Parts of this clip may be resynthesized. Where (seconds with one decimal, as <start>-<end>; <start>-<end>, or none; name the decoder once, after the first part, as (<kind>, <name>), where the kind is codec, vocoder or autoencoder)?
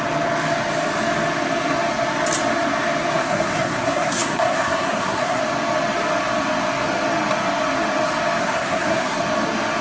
3.1-5.4 (codec, SNAC); 8.4-9.2